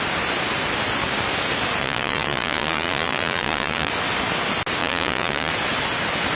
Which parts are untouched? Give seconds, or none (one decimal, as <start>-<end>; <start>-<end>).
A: 0.0-1.8; 3.9-4.8; 5.5-6.3

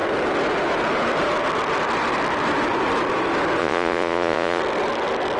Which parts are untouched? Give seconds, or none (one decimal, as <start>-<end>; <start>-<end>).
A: 0.0-3.6; 4.6-5.4

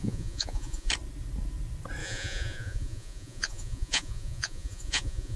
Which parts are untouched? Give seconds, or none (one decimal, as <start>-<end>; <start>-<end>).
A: 0.9-2.0

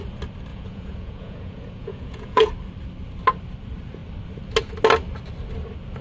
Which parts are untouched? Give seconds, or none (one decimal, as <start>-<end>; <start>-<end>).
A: 0.0-0.5; 2.5-6.0

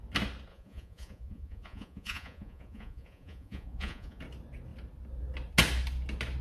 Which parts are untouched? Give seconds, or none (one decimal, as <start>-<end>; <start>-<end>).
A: 0.0-0.5; 4.2-6.4

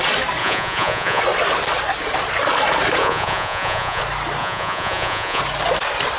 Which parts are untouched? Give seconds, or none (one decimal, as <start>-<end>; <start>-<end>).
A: 0.0-0.4; 1.2-3.0; 4.0-4.4; 5.4-6.2